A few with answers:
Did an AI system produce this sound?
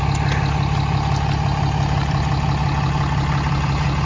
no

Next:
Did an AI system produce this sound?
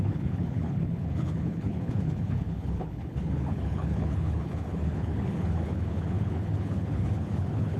yes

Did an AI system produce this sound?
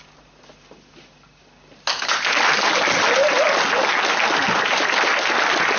no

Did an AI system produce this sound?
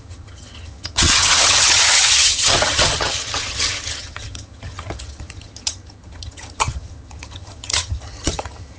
yes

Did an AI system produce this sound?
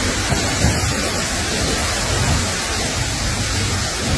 no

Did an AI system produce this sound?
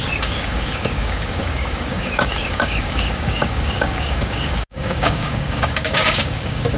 yes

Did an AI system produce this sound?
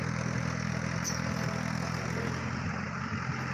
no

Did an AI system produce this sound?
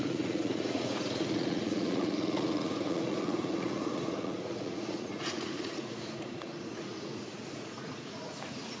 yes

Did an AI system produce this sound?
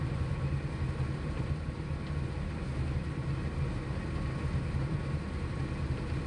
no